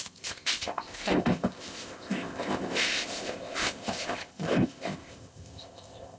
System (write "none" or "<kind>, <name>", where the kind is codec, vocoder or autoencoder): codec, ZipCodec